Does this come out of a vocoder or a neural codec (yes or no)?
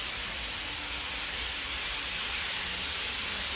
no